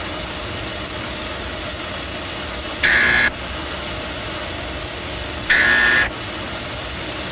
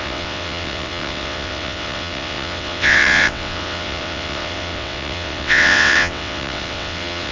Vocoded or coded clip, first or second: second